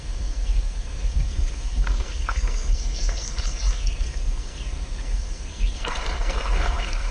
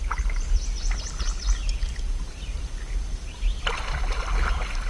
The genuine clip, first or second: second